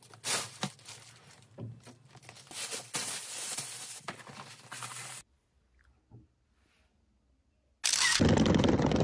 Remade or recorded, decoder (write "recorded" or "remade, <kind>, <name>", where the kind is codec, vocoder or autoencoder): recorded